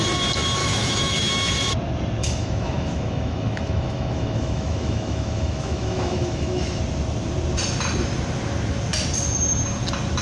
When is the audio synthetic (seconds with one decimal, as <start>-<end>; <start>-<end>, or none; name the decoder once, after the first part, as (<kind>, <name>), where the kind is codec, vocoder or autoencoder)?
0.6-1.5 (autoencoder, DAC-VAE); 2.2-6.8